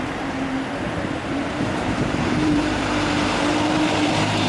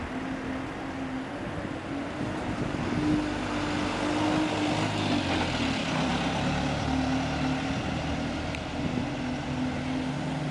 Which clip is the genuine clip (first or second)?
second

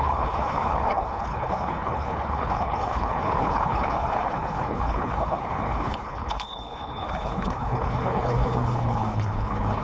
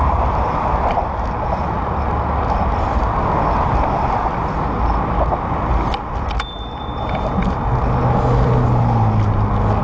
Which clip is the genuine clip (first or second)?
second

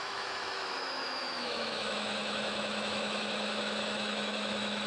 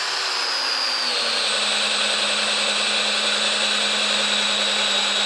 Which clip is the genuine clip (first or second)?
second